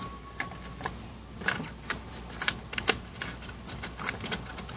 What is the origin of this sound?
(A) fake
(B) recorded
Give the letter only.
B